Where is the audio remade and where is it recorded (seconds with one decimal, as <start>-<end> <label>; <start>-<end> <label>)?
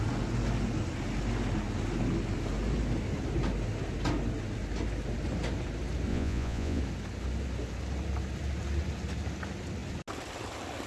0.0-6.1 recorded; 6.1-6.8 remade; 6.8-10.9 recorded